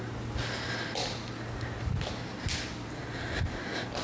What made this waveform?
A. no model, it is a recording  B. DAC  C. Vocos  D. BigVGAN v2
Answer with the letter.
A